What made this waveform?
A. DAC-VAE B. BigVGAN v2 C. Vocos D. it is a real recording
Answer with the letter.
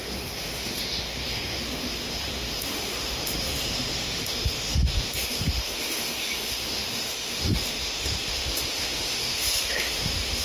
A